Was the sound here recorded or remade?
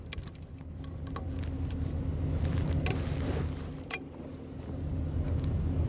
recorded